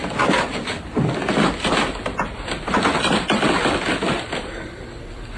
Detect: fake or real real